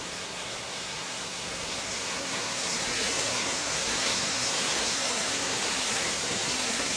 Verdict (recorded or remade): remade